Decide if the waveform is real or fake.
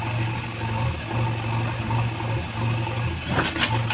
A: real